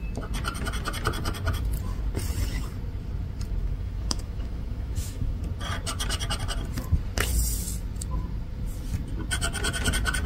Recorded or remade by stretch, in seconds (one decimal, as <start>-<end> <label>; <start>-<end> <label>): 0.0-3.6 recorded; 3.6-5.4 remade; 5.4-10.3 recorded